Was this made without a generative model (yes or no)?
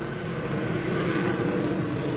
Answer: yes